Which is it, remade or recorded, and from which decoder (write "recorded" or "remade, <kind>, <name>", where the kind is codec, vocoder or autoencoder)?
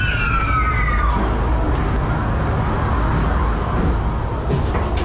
recorded